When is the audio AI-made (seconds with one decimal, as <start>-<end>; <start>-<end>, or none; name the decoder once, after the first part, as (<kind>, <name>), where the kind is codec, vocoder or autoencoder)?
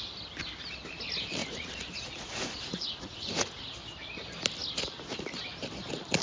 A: 1.4-3.6 (vocoder, Vocos)